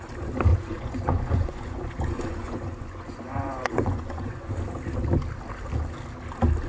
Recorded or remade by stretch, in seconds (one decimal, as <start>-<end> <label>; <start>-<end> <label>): 0.0-0.5 recorded; 0.5-4.5 remade; 4.5-6.7 recorded